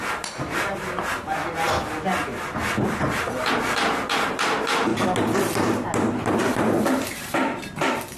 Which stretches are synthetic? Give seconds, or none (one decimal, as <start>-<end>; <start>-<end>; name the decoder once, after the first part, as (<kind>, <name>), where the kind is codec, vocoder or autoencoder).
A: 0.0-1.4 (vocoder, BigVGAN v2); 2.8-4.9; 6.1-8.2